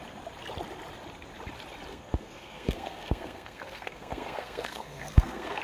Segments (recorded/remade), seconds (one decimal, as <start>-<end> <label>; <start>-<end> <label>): 0.0-1.9 recorded; 1.9-5.6 remade